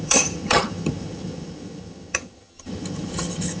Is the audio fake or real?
fake